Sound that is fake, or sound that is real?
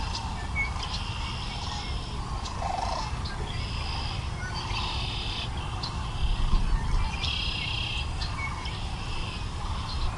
real